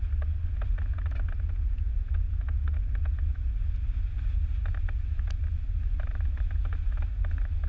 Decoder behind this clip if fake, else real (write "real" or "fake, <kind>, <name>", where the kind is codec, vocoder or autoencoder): real